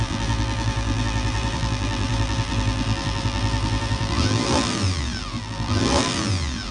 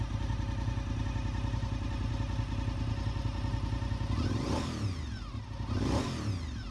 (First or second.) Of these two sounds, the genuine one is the second